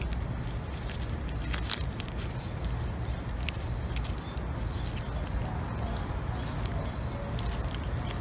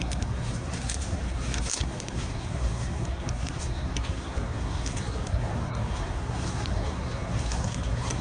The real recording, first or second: first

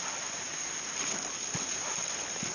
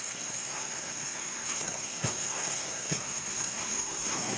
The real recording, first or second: first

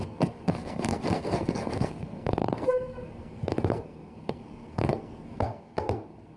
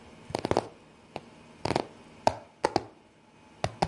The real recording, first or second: second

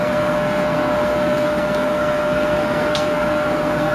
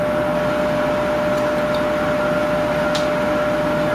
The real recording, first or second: second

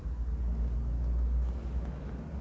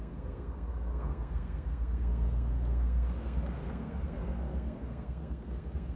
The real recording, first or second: first